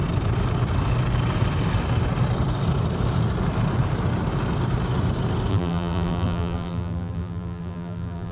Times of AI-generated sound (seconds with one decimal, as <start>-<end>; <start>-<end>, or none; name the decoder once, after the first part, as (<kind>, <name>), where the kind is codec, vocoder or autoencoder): 5.5-8.3 (vocoder, BigVGAN v2)